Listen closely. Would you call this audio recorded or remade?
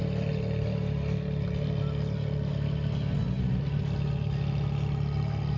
recorded